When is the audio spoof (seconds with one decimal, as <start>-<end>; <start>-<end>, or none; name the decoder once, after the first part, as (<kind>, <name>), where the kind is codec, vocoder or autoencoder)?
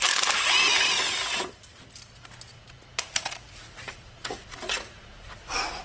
2.5-5.8 (vocoder, Vocos)